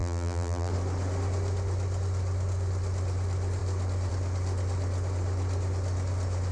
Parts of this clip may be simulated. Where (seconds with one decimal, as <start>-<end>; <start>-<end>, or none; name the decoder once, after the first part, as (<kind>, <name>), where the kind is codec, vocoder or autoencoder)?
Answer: 0.0-0.7 (vocoder, BigVGAN v2)

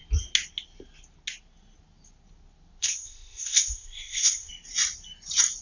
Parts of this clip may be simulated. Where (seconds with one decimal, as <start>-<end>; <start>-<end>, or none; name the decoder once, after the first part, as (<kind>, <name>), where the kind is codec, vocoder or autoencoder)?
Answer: 2.8-4.5 (codec, ZipCodec)